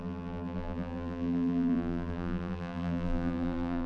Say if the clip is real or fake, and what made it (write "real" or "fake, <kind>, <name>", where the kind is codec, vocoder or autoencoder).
fake, vocoder, BigVGAN v2